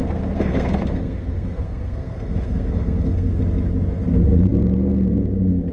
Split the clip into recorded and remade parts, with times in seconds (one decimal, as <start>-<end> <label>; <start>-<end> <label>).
0.0-3.4 remade; 3.4-5.7 recorded